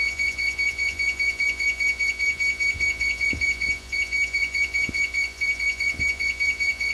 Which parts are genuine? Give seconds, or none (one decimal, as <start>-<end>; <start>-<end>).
none